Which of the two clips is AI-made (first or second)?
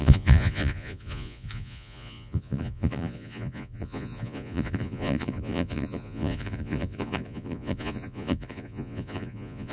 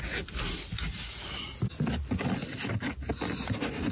first